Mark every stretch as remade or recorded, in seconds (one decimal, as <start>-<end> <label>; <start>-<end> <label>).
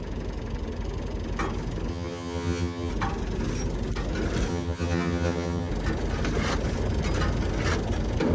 0.0-1.9 recorded; 1.9-2.9 remade; 2.9-4.5 recorded; 4.5-5.7 remade; 5.7-8.3 recorded